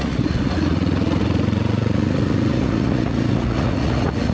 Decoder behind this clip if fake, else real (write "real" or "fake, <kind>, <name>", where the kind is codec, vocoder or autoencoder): fake, vocoder, Vocos